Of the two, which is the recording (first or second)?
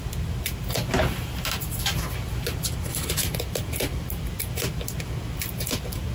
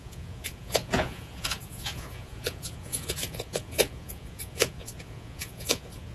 first